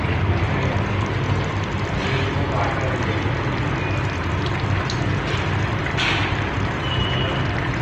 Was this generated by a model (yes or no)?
no